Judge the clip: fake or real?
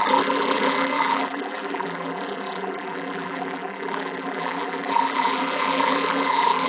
fake